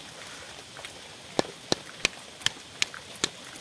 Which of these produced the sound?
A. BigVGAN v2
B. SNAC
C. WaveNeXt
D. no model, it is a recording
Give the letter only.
D